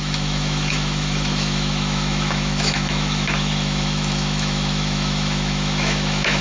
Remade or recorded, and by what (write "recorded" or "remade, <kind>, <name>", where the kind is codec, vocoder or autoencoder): remade, autoencoder, DAC-VAE